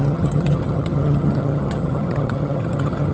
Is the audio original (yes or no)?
no